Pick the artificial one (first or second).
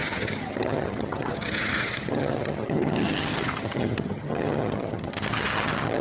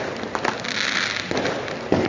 first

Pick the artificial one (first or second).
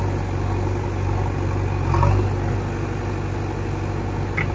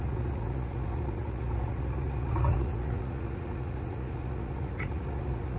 second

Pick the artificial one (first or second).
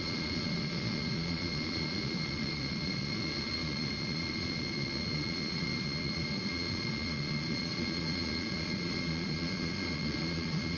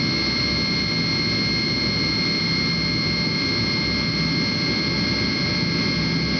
first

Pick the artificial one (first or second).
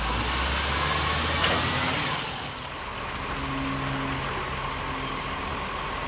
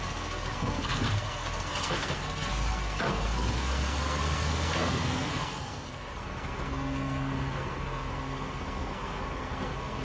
second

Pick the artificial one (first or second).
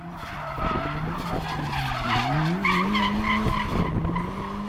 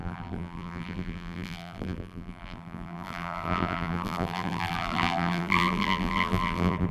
second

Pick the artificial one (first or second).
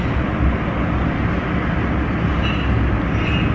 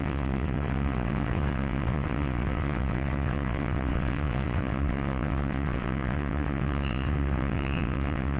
second